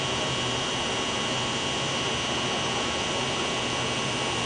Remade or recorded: recorded